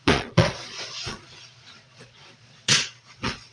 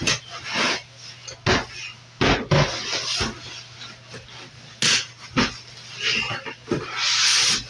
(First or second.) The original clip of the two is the second